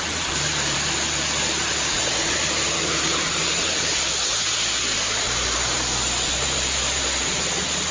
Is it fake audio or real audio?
fake